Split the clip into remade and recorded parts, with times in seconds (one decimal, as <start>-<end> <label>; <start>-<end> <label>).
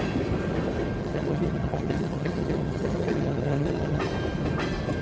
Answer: 0.0-1.0 recorded; 1.0-4.0 remade; 4.0-5.0 recorded